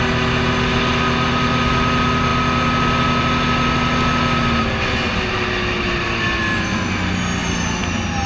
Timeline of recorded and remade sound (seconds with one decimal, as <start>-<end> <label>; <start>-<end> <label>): 0.0-8.3 recorded